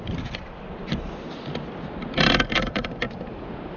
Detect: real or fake real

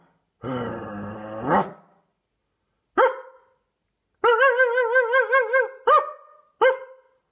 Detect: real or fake real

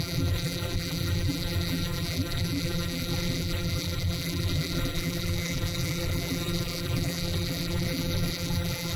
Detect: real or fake fake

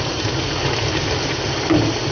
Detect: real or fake real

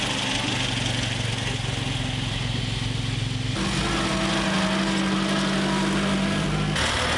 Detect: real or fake real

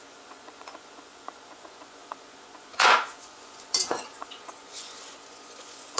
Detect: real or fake fake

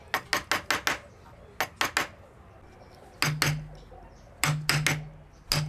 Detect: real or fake real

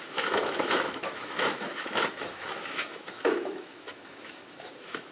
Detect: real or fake fake